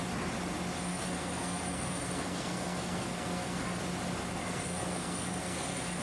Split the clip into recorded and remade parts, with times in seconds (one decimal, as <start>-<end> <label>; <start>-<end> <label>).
0.0-0.9 recorded; 0.9-3.8 remade; 3.8-4.3 recorded; 4.3-6.0 remade